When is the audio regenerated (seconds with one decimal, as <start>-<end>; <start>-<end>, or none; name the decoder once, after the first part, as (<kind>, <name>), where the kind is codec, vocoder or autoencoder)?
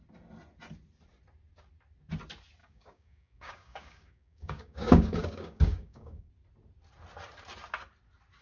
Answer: 2.6-6.3 (codec, DAC)